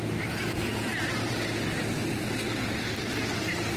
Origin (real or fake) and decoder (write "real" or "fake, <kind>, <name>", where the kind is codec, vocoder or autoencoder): real